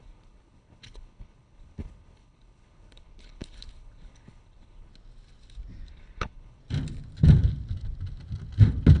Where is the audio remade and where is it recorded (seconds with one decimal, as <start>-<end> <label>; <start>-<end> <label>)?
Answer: 0.0-4.9 remade; 4.9-5.9 recorded; 5.9-6.6 remade; 6.6-9.0 recorded